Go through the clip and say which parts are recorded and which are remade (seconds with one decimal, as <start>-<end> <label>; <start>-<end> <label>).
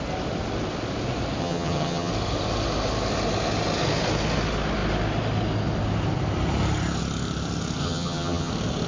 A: 0.0-1.4 recorded; 1.4-2.1 remade; 2.1-7.8 recorded; 7.8-8.5 remade; 8.5-8.9 recorded